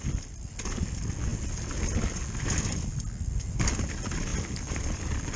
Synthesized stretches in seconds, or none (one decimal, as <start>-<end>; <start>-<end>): none

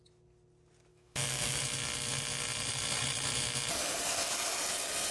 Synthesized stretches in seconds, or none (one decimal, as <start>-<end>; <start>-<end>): 0.9-1.6

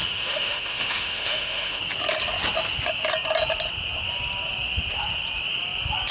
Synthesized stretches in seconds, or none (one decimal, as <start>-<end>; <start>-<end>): 0.0-1.8

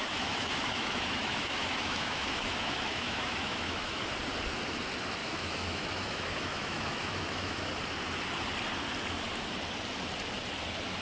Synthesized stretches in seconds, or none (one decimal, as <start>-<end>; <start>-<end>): 0.0-4.0; 5.2-7.7

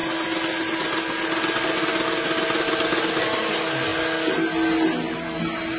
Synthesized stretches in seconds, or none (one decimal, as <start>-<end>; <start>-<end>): none

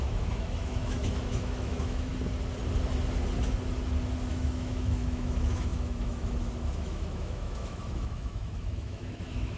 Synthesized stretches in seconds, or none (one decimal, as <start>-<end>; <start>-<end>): 0.0-2.1; 4.3-9.6

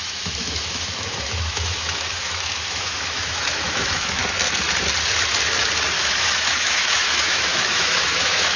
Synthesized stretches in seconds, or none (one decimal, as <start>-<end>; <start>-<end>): 0.0-4.2; 6.0-8.6

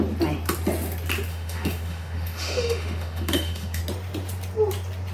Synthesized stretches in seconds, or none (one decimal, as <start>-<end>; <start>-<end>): 1.3-3.8